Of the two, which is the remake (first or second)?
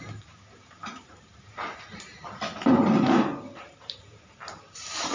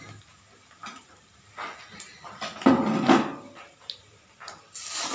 first